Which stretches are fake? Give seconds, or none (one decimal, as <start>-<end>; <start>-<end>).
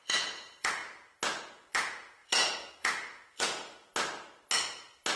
0.0-0.8; 1.4-3.9